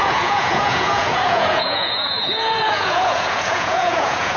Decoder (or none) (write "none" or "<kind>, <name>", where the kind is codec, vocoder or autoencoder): vocoder, Vocos